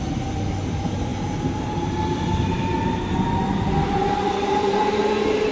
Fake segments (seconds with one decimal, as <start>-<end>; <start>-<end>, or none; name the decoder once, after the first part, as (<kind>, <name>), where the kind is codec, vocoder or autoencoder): none